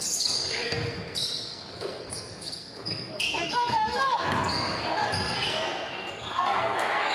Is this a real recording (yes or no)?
no